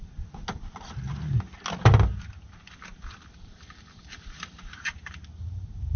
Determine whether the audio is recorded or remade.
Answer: recorded